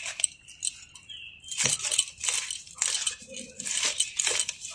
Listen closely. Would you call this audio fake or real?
real